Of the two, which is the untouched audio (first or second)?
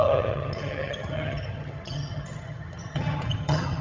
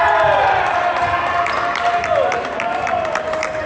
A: second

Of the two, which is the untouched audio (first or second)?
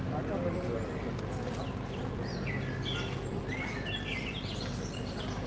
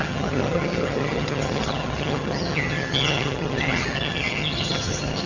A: first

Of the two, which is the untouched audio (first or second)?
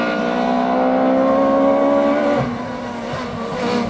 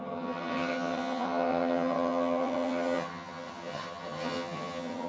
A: first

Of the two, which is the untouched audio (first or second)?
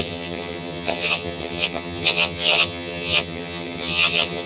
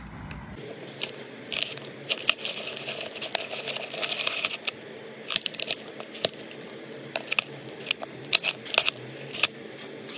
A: second